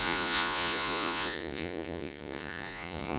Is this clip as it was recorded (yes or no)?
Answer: no